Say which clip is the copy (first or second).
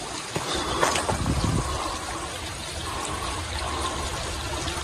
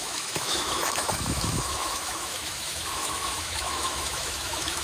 second